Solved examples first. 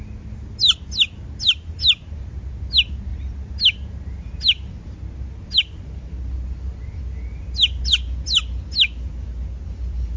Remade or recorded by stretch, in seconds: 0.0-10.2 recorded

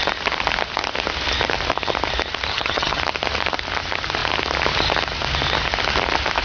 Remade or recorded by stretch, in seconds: 0.0-2.5 recorded; 2.5-3.0 remade; 3.0-6.4 recorded

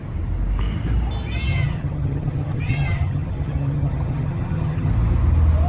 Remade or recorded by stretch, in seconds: 0.0-1.5 recorded; 1.5-4.9 remade; 4.9-5.7 recorded

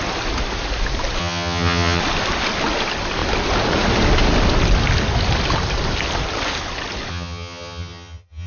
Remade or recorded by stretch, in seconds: 0.0-1.2 recorded; 1.2-2.0 remade; 2.0-7.1 recorded; 7.1-8.5 remade

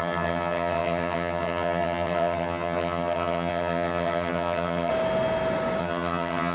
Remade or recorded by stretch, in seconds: 0.0-4.9 remade; 4.9-5.8 recorded; 5.8-6.5 remade

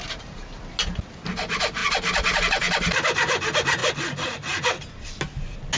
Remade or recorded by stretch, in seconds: 0.0-5.8 recorded